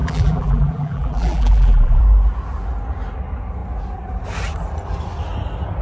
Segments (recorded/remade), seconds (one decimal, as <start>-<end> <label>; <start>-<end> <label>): 0.0-2.0 remade; 2.0-5.8 recorded